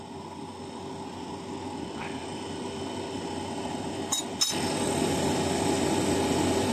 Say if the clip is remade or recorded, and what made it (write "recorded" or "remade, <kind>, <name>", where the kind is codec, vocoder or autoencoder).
recorded